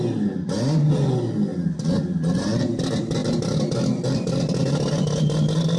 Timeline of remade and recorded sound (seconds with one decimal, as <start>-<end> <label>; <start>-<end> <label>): 0.0-5.8 recorded